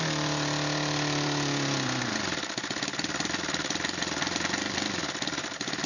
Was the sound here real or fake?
real